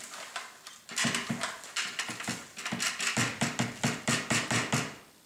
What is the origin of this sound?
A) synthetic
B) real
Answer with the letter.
B